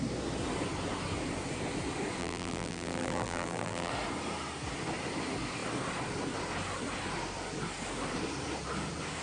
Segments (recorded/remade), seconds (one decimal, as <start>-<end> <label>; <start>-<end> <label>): 0.0-2.2 recorded; 2.2-3.9 remade; 3.9-9.2 recorded